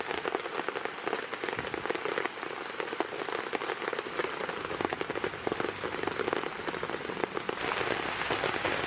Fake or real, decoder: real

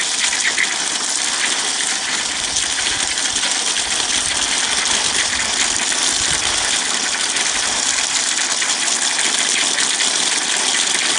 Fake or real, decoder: real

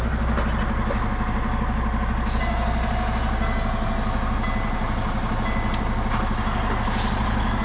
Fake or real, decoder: real